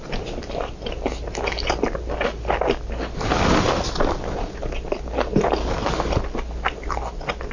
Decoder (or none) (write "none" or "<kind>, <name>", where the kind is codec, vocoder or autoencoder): none